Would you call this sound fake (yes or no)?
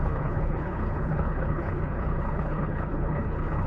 yes